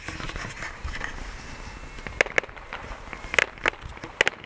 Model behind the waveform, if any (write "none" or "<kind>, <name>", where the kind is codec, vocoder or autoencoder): none